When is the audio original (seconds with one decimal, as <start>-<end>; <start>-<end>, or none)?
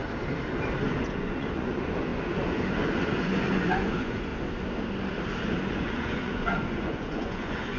0.0-0.8; 4.3-5.7